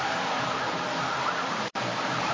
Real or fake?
fake